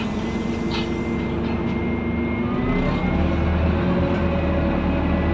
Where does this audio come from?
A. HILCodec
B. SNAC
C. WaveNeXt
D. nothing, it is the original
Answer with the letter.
D